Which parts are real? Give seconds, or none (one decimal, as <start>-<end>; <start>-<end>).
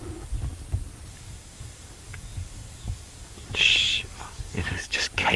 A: 0.5-1.1